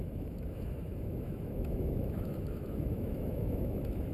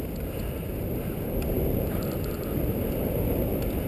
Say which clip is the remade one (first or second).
first